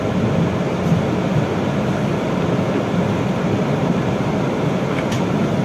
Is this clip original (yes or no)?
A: yes